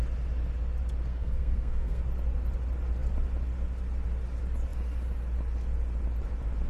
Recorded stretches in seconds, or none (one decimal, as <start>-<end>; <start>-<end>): 0.0-1.1; 2.0-6.7